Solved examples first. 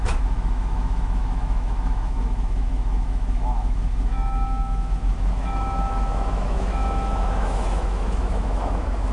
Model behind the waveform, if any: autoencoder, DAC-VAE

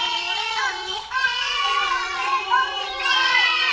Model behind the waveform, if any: vocoder, Vocos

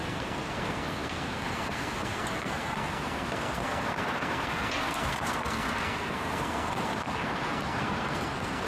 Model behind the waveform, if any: codec, SNAC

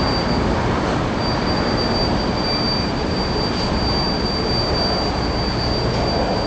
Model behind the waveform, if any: none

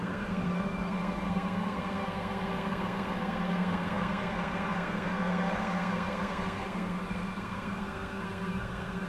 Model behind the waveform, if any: codec, SNAC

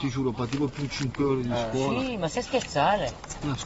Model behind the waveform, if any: none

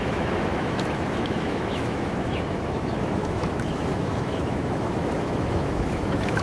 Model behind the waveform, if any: autoencoder, DAC-VAE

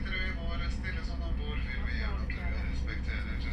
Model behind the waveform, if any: none